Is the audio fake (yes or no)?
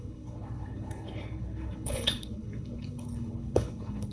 yes